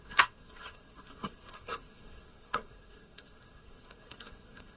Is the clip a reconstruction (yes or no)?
yes